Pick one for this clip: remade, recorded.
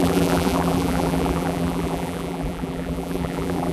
remade